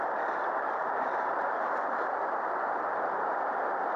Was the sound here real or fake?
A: real